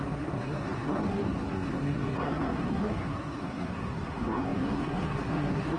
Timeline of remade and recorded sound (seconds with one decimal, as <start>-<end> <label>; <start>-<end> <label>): 0.0-5.8 remade